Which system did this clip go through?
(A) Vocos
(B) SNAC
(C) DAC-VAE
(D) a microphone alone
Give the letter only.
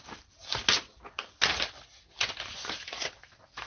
D